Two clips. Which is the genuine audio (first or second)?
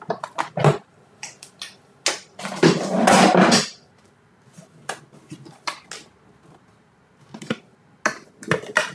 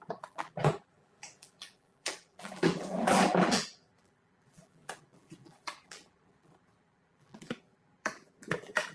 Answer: first